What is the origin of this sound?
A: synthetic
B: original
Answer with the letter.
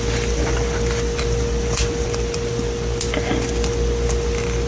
B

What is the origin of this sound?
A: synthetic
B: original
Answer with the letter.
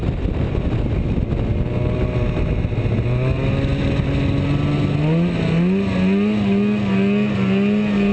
B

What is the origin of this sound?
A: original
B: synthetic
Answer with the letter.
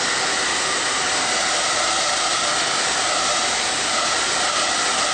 A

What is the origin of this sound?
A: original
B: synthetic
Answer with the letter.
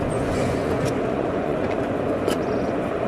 B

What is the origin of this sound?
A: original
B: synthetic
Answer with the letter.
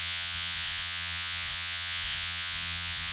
B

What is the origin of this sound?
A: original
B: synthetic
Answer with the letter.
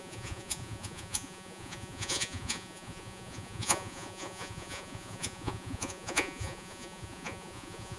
B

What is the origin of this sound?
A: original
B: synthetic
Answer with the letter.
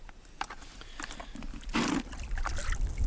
A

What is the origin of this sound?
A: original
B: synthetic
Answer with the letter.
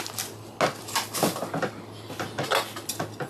A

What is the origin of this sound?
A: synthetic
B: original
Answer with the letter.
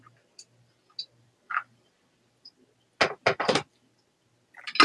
B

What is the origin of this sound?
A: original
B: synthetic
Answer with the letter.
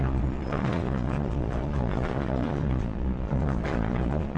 B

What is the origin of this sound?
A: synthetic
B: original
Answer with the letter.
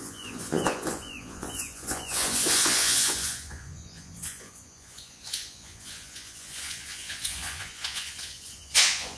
A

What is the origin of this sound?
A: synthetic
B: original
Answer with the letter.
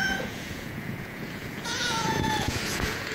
A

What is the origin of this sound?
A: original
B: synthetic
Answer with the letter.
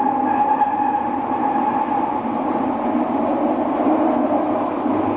A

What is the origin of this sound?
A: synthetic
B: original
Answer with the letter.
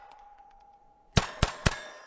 A